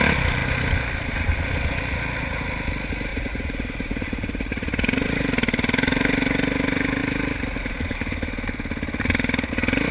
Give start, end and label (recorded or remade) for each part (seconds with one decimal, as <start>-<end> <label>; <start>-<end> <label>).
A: 0.0-3.1 recorded; 3.1-5.2 remade; 5.2-9.9 recorded